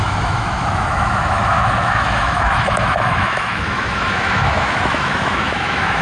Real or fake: fake